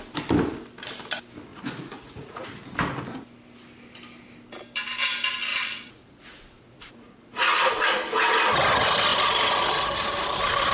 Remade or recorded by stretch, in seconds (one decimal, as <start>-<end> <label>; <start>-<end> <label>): 0.0-1.5 recorded; 1.5-2.4 remade; 2.4-5.5 recorded; 5.5-7.7 remade; 7.7-10.7 recorded